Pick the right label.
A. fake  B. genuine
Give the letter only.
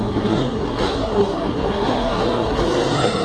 A